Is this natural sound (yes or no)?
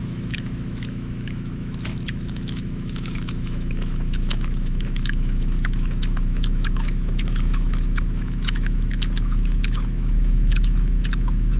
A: no